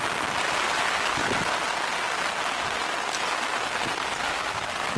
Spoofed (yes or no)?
no